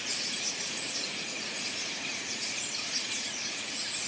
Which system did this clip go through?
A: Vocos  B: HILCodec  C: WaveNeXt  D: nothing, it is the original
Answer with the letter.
A